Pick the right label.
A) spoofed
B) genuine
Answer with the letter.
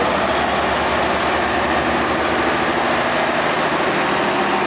B